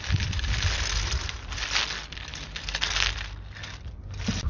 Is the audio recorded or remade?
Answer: recorded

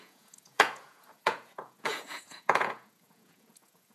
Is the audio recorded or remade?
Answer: remade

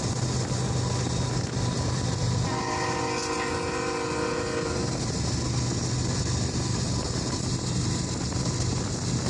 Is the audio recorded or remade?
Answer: recorded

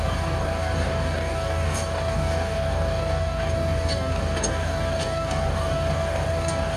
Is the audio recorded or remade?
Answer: remade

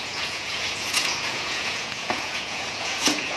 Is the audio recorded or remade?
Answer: remade